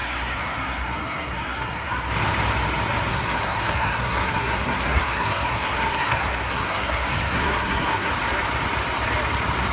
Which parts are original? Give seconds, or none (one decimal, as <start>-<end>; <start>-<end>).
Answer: 1.9-3.1; 8.1-9.7